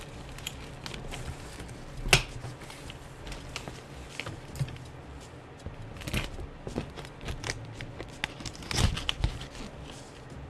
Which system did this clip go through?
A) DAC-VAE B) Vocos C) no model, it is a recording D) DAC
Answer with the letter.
C